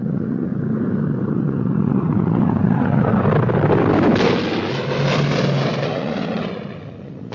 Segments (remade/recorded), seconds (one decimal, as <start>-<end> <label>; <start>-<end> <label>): 0.0-0.5 remade; 0.5-1.3 recorded; 1.3-3.1 remade; 3.1-5.8 recorded; 5.8-7.3 remade